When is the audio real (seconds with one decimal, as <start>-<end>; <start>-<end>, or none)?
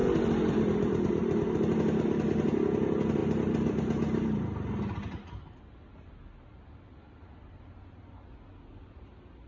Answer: 0.6-9.5